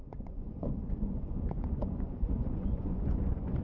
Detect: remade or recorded remade